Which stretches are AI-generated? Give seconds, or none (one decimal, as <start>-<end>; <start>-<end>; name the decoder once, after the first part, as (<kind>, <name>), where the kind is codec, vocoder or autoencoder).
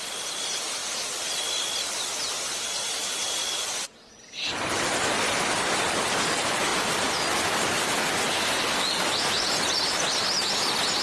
none